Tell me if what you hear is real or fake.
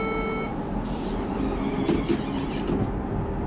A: real